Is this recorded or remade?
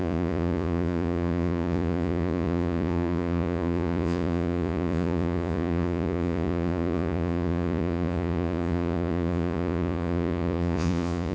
remade